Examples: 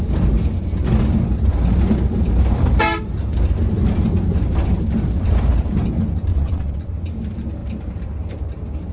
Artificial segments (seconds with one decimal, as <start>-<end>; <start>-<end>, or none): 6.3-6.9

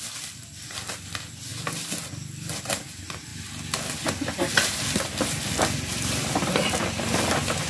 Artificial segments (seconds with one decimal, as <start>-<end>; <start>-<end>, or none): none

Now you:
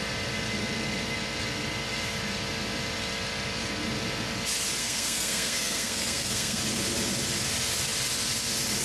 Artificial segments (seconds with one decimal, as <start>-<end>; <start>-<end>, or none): 4.8-6.6